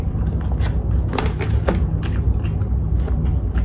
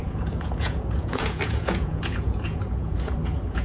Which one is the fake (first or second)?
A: second